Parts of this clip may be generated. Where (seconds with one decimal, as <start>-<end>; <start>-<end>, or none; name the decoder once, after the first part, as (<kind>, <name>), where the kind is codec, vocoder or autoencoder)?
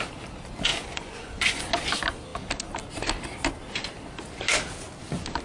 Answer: 0.7-1.6 (vocoder, Vocos)